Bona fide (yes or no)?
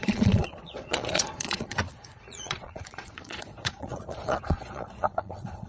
no